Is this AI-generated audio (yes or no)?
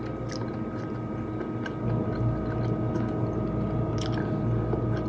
no